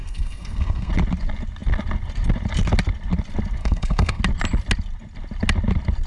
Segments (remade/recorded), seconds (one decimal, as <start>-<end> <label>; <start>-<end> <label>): 0.0-0.9 remade; 0.9-3.6 recorded; 3.6-4.2 remade; 4.2-6.1 recorded